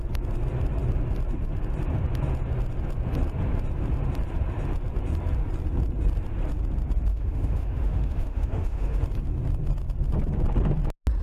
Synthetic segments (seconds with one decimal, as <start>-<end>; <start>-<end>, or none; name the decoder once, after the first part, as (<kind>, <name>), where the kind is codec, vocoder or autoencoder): 7.1-9.0 (autoencoder, DAC-VAE)